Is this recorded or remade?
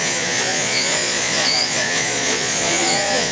remade